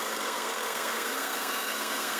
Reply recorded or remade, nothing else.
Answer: remade